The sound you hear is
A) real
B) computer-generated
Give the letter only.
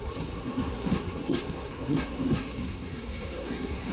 B